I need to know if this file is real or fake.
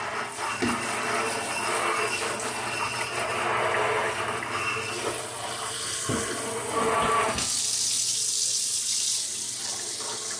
real